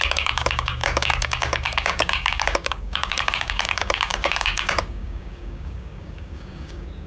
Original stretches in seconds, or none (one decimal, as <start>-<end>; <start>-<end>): none